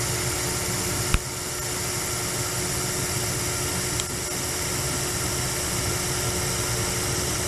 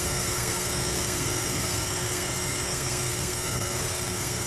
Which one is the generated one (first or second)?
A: second